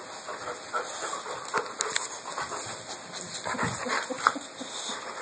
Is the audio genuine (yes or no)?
yes